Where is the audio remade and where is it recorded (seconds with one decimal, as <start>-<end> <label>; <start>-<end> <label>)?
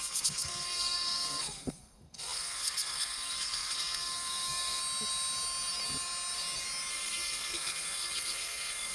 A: 0.0-4.8 remade; 4.8-6.9 recorded; 6.9-8.9 remade